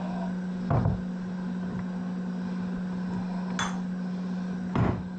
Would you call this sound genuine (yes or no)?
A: yes